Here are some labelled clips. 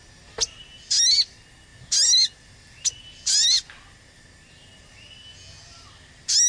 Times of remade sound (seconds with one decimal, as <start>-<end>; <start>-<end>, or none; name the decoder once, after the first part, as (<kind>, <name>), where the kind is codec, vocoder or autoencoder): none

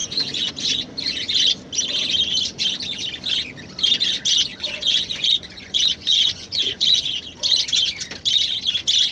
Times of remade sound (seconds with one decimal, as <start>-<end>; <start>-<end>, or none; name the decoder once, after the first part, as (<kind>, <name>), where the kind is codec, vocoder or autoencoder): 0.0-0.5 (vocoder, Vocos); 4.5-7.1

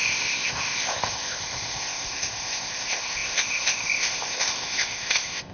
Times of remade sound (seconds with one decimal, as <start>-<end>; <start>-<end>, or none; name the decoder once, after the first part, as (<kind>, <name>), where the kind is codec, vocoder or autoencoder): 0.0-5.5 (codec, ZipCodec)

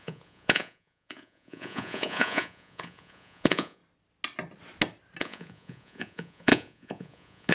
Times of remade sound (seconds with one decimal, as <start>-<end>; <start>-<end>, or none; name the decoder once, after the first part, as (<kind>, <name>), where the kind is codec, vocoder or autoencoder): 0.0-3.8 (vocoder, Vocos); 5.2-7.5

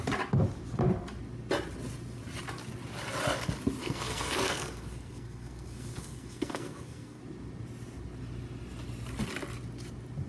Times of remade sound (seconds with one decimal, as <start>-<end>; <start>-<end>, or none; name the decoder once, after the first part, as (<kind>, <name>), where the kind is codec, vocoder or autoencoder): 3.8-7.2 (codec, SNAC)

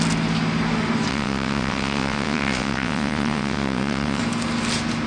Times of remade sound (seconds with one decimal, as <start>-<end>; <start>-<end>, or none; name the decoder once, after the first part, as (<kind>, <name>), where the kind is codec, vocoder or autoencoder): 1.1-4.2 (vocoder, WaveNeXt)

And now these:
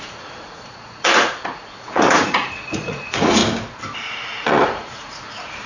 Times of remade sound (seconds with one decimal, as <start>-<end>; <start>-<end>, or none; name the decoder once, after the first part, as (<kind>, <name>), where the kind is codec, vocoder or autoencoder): 0.0-3.4 (vocoder, Vocos); 4.1-5.7

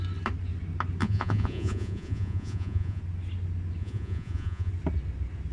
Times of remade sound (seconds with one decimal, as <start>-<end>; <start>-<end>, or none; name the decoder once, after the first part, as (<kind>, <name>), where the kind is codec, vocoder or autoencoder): 1.0-3.0 (vocoder, Vocos); 3.8-4.7